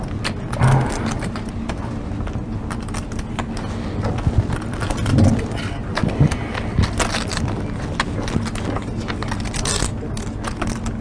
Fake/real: real